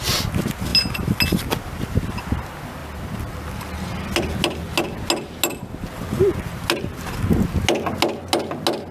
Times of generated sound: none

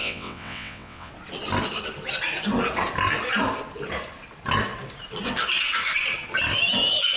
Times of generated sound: 0.0-1.1 (vocoder, WaveNeXt)

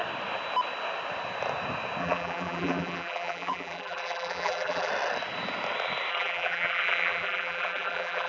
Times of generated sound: 2.0-4.9 (vocoder, BigVGAN v2); 6.1-8.3